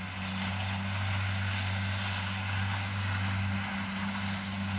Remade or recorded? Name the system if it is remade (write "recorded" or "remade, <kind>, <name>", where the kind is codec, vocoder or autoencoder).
recorded